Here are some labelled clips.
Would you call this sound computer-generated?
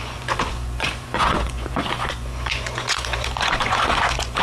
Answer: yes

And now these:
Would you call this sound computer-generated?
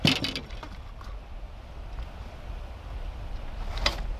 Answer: no